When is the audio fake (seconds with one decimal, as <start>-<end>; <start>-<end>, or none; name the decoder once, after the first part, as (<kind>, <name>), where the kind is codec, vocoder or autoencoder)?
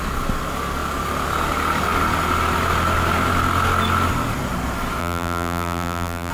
5.0-6.3 (vocoder, BigVGAN v2)